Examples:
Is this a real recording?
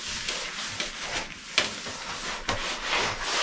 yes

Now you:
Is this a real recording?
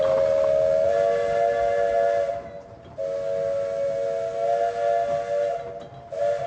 yes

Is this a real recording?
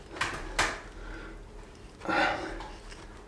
yes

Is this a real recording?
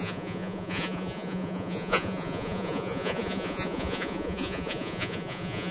no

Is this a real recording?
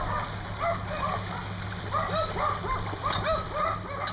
yes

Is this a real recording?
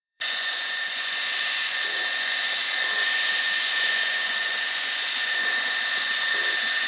no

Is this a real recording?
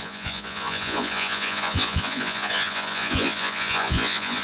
no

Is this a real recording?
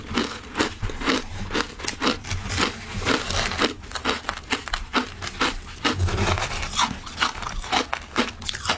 yes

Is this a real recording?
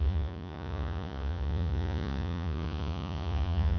no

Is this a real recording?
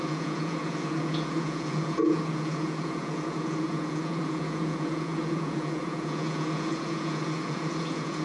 no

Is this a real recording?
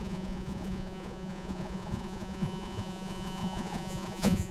no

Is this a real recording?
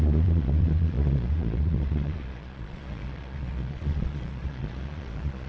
no